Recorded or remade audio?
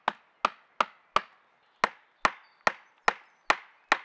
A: recorded